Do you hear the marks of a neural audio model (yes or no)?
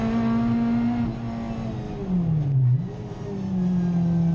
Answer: no